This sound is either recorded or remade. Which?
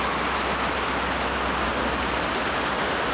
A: recorded